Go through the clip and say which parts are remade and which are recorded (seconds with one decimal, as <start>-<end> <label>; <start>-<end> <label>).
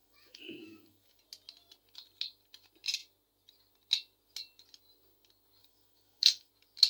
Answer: 0.0-1.2 remade; 1.2-5.6 recorded; 5.6-6.5 remade; 6.5-6.9 recorded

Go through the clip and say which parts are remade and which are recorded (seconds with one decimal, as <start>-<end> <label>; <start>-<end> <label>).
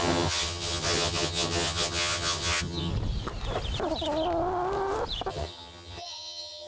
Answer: 0.0-2.9 remade; 2.9-5.3 recorded; 5.3-6.7 remade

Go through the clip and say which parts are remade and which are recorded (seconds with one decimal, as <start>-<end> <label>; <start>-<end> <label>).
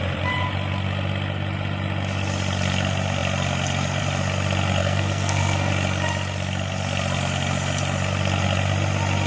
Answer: 0.0-4.8 recorded; 4.8-5.7 remade; 5.7-9.3 recorded